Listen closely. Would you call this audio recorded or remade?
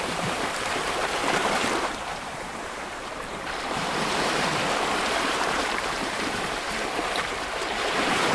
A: remade